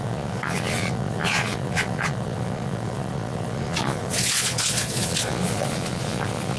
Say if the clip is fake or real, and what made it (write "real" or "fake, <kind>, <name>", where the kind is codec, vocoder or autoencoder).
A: fake, vocoder, Vocos